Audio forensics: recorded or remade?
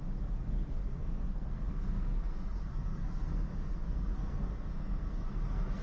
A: remade